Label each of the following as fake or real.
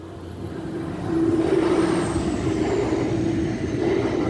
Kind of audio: fake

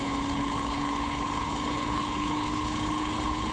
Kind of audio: fake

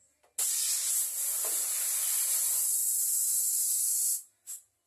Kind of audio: real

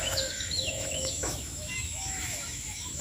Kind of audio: fake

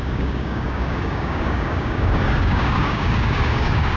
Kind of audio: fake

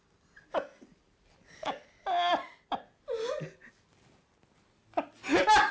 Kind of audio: real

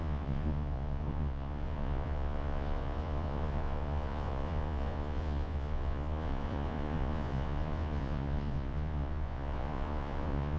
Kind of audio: fake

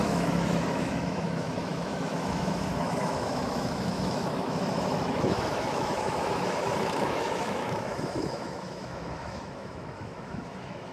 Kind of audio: fake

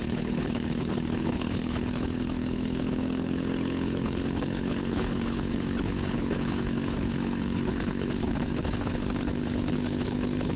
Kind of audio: fake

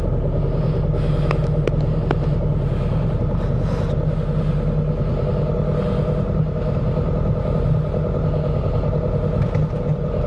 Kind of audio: real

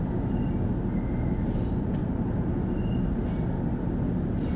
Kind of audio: real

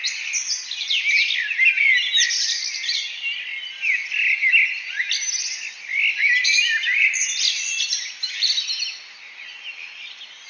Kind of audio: real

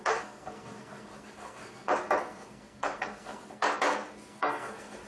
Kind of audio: fake